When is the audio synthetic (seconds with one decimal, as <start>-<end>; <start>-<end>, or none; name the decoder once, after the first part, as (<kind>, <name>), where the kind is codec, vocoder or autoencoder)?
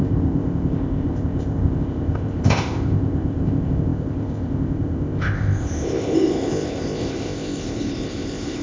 0.0-8.6 (codec, ZipCodec)